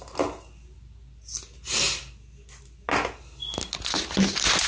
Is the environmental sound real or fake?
real